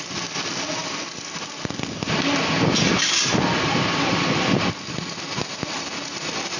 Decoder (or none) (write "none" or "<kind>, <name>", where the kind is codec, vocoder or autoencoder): none